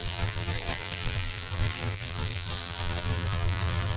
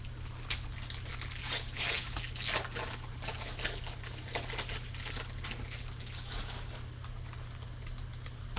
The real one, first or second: second